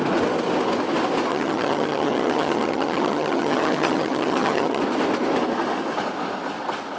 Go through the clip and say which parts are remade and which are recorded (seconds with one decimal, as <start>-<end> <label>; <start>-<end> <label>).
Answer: 0.0-1.3 recorded; 1.3-4.8 remade; 4.8-7.0 recorded